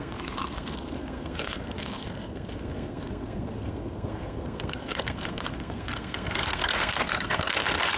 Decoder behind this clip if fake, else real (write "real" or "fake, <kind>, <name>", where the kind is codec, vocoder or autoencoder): fake, codec, SNAC